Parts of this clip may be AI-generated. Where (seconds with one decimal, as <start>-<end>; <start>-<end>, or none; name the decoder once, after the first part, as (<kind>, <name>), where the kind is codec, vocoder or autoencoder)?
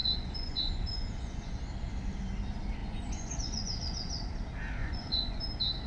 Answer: 0.0-1.6 (vocoder, Vocos); 2.8-4.3; 4.8-5.4